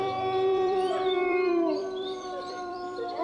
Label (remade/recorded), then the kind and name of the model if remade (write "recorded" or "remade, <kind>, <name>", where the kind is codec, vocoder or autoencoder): remade, vocoder, BigVGAN v2